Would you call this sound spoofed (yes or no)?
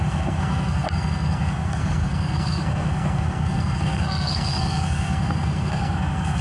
yes